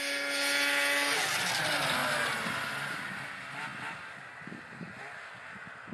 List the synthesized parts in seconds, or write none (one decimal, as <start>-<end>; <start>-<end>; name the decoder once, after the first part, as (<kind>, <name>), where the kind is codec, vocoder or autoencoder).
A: none